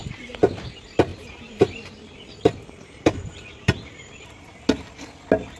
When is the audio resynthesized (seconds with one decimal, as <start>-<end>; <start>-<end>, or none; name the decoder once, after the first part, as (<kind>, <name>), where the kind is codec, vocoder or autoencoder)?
1.1-4.1 (vocoder, BigVGAN v2)